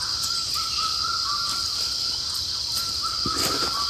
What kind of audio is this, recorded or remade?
recorded